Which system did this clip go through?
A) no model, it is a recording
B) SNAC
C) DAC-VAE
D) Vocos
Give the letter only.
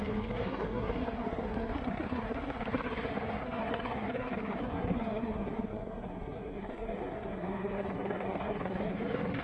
B